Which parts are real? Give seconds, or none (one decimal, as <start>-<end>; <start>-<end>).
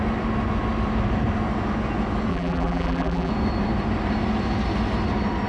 0.0-2.3; 3.3-5.5